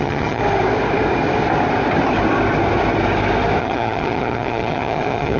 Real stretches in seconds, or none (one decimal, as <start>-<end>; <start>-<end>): 0.4-3.6